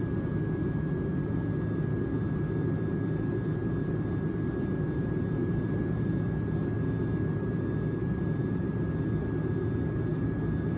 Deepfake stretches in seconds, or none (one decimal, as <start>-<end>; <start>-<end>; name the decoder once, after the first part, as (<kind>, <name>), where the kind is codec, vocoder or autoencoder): 5.4-6.1 (vocoder, BigVGAN v2); 8.0-8.7; 10.1-10.8

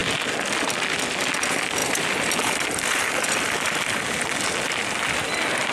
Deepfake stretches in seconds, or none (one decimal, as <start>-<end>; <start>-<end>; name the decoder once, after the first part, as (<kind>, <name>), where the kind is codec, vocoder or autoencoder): 1.8-4.2 (vocoder, BigVGAN v2)